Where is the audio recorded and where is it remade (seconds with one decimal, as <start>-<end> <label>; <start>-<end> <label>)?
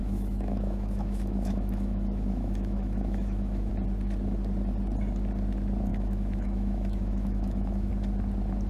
0.0-3.7 remade; 3.7-5.9 recorded; 5.9-7.9 remade; 7.9-8.7 recorded